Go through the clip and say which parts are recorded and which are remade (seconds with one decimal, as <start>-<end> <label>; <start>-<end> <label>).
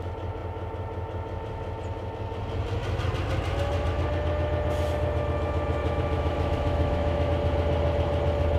0.0-5.8 recorded; 5.8-7.3 remade; 7.3-8.6 recorded